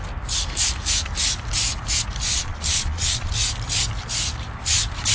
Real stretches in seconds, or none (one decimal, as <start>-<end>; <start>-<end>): 0.0-2.3; 3.3-5.1